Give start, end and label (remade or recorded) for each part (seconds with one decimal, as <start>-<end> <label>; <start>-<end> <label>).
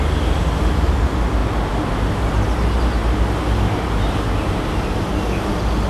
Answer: 0.0-5.9 recorded